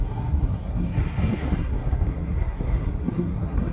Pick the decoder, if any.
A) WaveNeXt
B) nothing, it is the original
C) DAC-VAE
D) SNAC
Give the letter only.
D